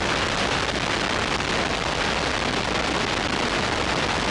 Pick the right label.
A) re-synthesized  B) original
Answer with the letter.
B